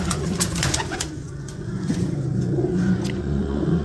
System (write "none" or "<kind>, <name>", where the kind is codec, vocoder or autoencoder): vocoder, Vocos